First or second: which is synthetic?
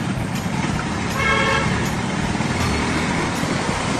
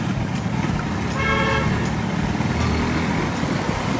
first